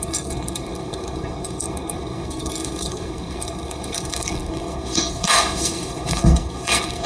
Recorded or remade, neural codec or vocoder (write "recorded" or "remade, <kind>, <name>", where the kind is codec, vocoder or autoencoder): remade, codec, SNAC